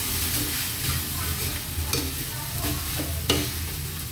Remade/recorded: recorded